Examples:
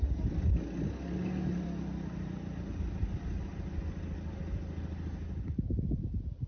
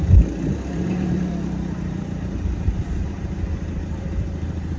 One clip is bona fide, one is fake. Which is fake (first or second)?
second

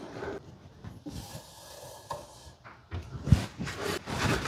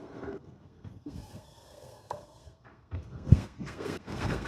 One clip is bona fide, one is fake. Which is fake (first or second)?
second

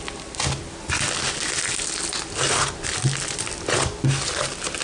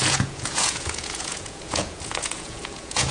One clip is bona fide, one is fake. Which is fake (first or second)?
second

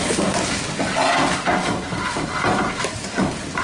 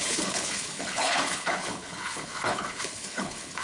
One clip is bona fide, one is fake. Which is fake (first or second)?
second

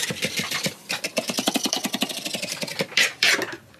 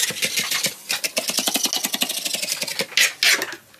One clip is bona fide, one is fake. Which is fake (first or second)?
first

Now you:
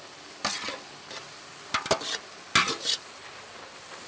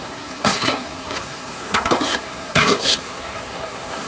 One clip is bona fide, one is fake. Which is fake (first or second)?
second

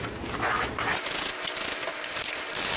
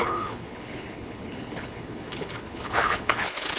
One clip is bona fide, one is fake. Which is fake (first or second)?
second